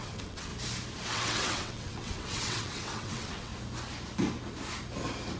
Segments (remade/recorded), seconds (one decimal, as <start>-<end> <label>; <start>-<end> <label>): 0.0-0.5 remade; 0.5-1.1 recorded; 1.1-3.5 remade; 3.5-5.4 recorded